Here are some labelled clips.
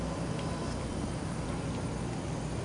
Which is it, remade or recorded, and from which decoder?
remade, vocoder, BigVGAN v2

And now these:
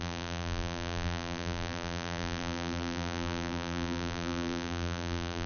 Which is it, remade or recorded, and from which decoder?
remade, vocoder, BigVGAN v2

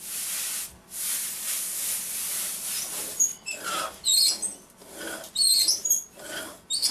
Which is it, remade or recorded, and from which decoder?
recorded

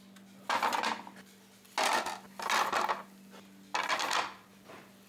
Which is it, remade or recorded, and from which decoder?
recorded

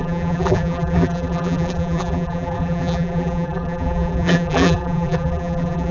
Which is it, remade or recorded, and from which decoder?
remade, vocoder, BigVGAN v2